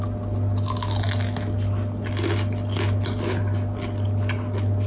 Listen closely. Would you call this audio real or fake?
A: real